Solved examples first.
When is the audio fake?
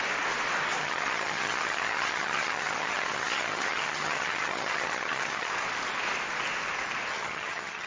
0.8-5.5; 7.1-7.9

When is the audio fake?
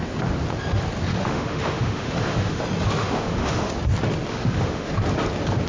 1.1-2.6; 3.0-3.7; 4.3-4.9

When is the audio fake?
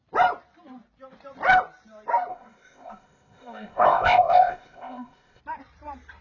2.3-5.4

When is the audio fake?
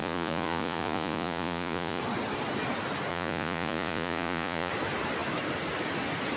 0.0-2.0; 3.1-4.7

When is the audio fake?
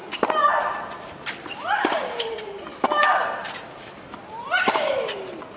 0.0-2.0; 2.7-4.2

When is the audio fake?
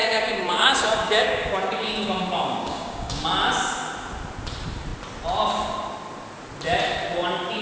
0.0-3.2